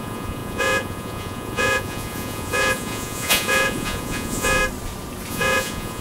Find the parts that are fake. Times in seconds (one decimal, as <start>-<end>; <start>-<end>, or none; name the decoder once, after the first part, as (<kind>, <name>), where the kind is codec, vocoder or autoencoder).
0.0-4.6 (vocoder, Vocos); 5.3-6.0